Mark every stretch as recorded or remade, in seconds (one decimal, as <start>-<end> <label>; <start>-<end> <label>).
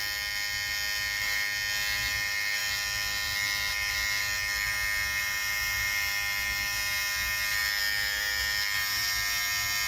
0.0-9.9 recorded